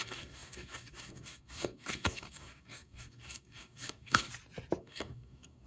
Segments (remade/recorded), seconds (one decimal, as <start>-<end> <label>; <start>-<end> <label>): 0.0-4.3 remade; 4.3-4.8 recorded; 4.8-5.7 remade